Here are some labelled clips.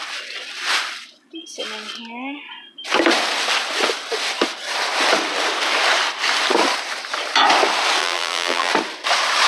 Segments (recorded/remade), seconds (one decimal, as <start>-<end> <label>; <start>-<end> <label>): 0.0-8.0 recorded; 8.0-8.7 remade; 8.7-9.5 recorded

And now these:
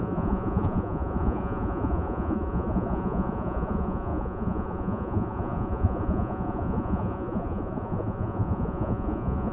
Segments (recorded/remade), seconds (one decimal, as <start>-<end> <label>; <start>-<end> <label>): 0.0-9.5 remade

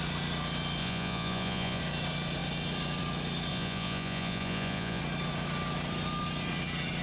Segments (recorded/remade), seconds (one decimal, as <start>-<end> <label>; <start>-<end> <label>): 0.0-0.8 recorded; 0.8-1.8 remade; 1.8-3.5 recorded; 3.5-5.0 remade; 5.0-7.0 recorded

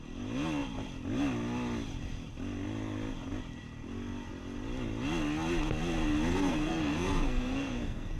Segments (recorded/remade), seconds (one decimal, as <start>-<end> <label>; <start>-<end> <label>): 0.0-6.3 recorded; 6.3-8.2 remade

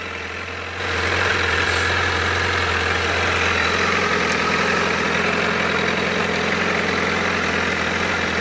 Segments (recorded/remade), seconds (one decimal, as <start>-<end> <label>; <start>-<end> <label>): 0.0-8.4 recorded